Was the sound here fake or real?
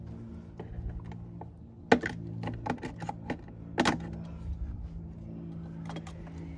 real